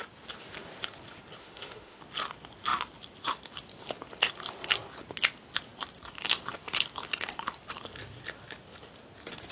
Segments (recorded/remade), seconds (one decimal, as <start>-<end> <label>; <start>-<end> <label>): 0.0-1.4 recorded; 1.4-2.0 remade; 2.0-9.5 recorded